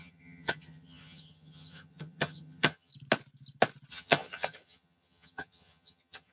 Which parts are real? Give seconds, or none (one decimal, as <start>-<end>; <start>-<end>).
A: 2.9-3.9